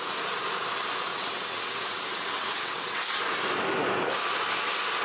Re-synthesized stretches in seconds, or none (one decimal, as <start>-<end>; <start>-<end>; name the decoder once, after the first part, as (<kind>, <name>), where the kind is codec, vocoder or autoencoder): 1.1-3.0 (vocoder, WaveNeXt)